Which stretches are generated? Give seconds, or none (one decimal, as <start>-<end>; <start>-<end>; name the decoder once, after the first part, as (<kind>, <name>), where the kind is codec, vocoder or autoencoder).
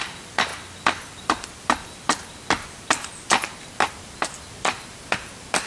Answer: 0.0-0.5 (vocoder, BigVGAN v2); 3.9-5.7